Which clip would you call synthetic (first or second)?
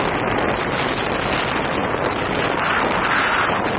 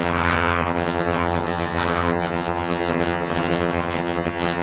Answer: second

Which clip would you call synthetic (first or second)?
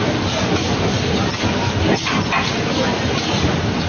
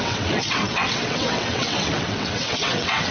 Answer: second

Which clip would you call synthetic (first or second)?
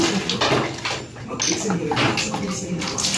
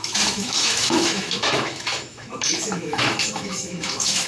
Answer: second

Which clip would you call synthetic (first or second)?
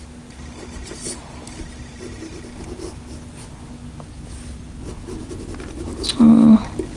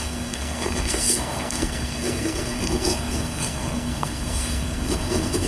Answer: second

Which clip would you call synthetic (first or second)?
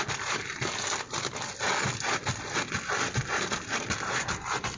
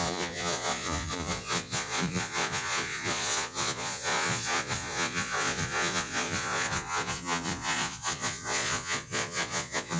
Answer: second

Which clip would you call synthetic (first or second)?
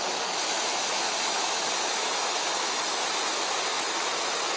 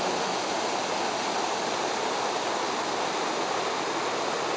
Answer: first